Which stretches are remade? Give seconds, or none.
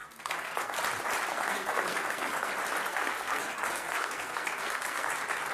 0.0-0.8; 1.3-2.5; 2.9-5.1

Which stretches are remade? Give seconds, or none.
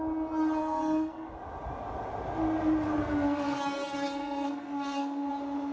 0.6-1.3; 2.9-5.3